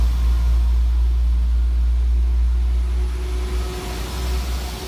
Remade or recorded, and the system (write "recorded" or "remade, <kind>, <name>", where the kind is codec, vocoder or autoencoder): recorded